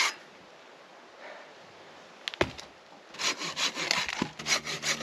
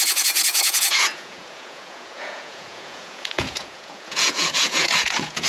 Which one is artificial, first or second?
second